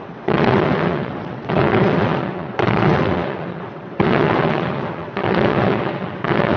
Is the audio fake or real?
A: fake